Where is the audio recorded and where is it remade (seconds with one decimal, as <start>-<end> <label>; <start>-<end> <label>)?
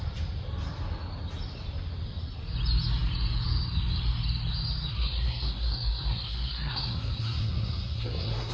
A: 0.0-4.9 recorded; 4.9-8.5 remade